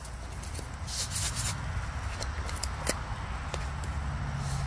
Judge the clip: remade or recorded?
recorded